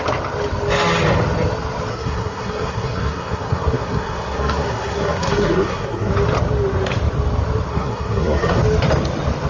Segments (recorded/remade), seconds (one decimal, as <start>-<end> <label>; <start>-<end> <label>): 0.0-1.9 recorded; 1.9-6.1 remade; 6.1-7.7 recorded; 7.7-8.6 remade; 8.6-9.5 recorded

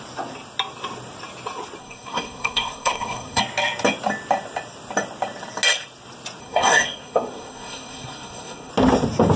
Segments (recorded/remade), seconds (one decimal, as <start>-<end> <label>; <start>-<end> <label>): 0.0-1.8 recorded; 1.8-3.4 remade; 3.4-6.4 recorded; 6.4-8.7 remade; 8.7-9.4 recorded

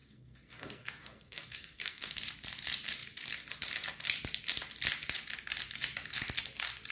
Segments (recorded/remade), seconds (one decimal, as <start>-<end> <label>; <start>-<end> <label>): 0.0-2.1 remade; 2.1-6.9 recorded

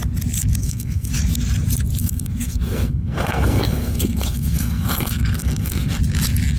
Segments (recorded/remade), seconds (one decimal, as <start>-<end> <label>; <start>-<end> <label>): 0.0-0.6 recorded; 0.6-1.1 remade; 1.1-2.0 recorded; 2.0-6.0 remade; 6.0-6.6 recorded

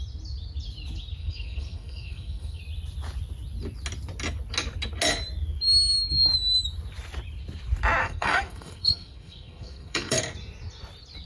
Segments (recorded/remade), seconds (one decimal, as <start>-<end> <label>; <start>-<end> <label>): 0.0-1.2 recorded; 1.2-2.6 remade; 2.6-8.0 recorded; 8.0-10.2 remade; 10.2-11.3 recorded